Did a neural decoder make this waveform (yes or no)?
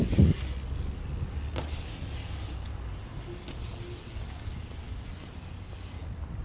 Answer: no